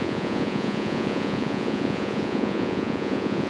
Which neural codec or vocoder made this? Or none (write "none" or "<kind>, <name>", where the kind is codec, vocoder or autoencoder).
vocoder, Vocos